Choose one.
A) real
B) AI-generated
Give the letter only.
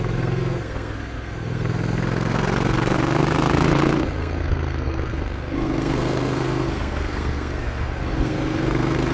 B